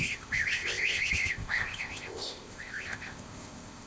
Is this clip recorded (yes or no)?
no